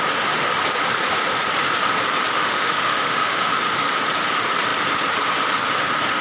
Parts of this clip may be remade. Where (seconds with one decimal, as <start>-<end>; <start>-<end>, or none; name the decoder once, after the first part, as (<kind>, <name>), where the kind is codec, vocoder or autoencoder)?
2.3-3.6 (autoencoder, DAC-VAE)